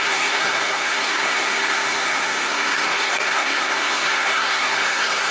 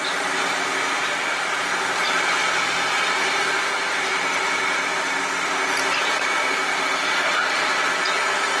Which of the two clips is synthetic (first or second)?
first